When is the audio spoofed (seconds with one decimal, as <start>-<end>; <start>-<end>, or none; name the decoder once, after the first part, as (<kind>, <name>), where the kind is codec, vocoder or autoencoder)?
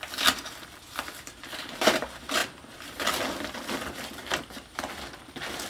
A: 0.0-2.4 (vocoder, BigVGAN v2)